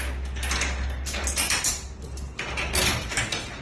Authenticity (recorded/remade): recorded